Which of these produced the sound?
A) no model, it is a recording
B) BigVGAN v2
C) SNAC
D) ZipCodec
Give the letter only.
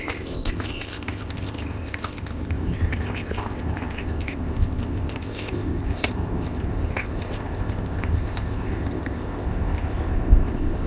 D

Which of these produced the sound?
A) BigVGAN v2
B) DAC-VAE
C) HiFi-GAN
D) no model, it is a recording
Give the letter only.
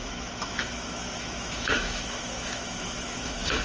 B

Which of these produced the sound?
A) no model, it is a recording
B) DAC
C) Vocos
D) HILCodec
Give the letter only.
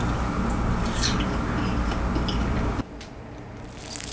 A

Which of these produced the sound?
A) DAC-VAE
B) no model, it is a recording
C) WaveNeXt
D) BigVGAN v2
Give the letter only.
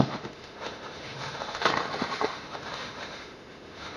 A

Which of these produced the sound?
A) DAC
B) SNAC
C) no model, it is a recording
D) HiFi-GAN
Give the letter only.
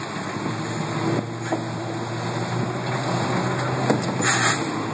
C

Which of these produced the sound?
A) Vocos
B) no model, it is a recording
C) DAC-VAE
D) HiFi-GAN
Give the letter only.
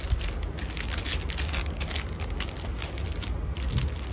B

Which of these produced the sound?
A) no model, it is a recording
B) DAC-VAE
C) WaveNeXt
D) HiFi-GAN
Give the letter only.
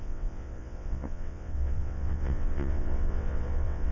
C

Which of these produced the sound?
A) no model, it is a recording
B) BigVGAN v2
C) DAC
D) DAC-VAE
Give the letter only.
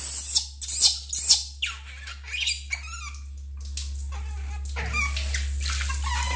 A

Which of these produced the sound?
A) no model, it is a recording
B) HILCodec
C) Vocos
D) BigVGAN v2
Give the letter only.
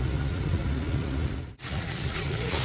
C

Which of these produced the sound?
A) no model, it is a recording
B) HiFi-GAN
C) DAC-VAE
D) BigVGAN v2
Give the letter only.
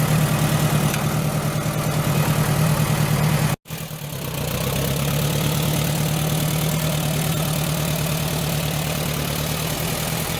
A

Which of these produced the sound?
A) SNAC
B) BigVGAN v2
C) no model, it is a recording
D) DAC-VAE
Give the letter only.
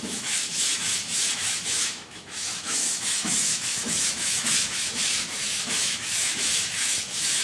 D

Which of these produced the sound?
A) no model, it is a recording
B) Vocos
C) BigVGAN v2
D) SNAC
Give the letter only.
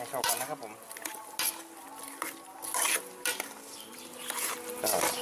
A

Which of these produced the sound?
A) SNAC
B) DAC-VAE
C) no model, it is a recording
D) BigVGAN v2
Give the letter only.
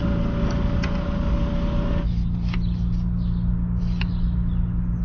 C